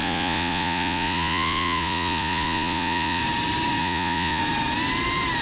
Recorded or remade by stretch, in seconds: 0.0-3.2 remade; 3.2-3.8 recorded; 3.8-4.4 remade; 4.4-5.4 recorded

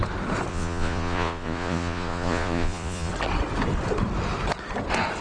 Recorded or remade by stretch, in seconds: 0.0-0.5 recorded; 0.5-3.1 remade; 3.1-5.2 recorded

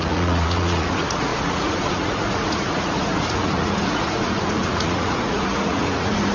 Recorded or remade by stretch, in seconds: 0.0-6.3 remade

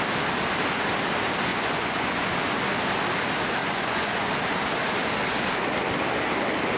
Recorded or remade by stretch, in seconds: 0.0-1.5 recorded; 1.5-2.3 remade; 2.3-3.6 recorded; 3.6-4.3 remade; 4.3-6.8 recorded

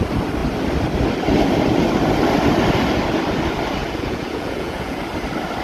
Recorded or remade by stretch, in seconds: 0.0-3.8 recorded; 3.8-5.0 remade; 5.0-5.6 recorded

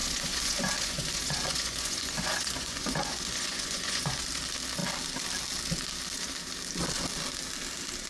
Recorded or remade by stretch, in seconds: 0.0-4.2 remade; 4.2-8.1 recorded

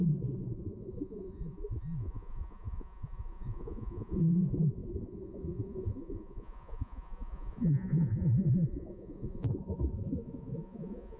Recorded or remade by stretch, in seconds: 0.0-11.2 remade